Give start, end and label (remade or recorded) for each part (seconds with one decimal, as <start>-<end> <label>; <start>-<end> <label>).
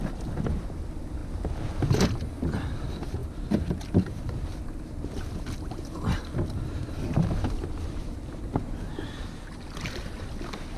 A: 0.0-1.2 remade; 1.2-2.4 recorded; 2.4-3.2 remade; 3.2-7.8 recorded; 7.8-10.8 remade